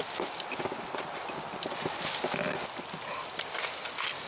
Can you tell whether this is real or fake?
real